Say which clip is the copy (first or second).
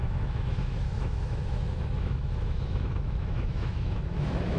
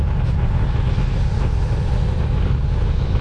first